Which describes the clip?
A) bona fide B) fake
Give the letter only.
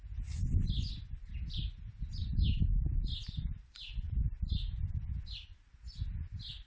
A